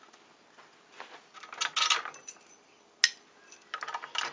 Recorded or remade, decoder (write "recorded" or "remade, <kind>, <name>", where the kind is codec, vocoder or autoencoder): recorded